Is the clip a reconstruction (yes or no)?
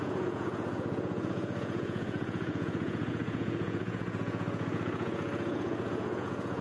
yes